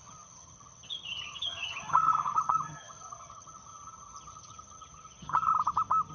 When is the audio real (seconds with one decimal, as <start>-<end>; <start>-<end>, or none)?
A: 5.5-6.1